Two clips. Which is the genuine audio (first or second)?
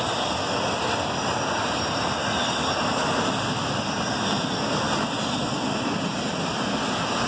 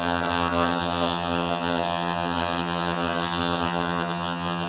first